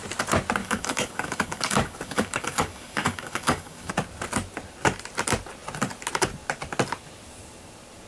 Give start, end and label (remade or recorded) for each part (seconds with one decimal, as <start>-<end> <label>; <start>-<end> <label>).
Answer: 0.0-0.6 recorded; 0.6-3.9 remade; 3.9-8.1 recorded